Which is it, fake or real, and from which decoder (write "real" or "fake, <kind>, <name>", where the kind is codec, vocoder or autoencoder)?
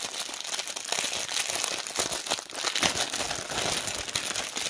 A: real